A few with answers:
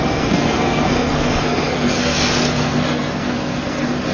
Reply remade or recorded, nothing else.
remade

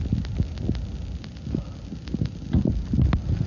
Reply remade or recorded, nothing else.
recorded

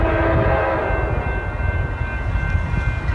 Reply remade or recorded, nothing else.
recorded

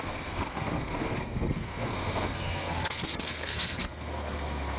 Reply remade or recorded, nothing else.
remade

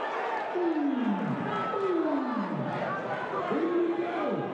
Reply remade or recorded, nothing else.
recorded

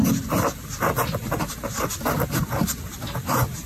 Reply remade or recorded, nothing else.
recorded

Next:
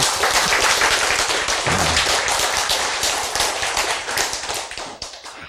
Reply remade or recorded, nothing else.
remade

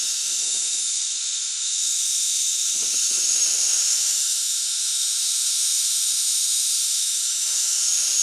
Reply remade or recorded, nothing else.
remade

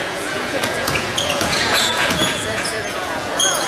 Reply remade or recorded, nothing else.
remade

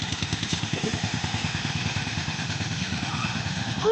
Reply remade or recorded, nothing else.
remade